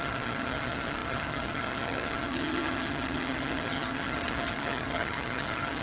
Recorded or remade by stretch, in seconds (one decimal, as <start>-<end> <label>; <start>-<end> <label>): 0.0-5.8 remade